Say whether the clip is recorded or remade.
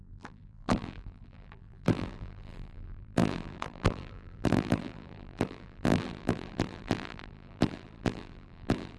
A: remade